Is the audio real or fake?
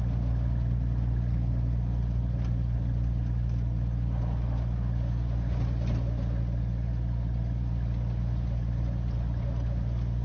real